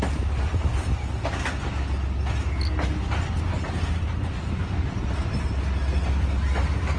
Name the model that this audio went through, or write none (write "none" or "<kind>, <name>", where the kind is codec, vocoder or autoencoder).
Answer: none